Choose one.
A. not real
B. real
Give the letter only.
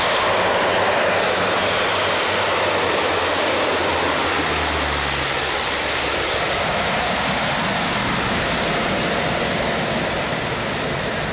B